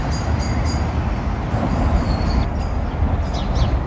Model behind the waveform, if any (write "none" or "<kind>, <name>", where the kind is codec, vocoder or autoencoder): none